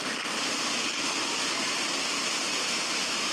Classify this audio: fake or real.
real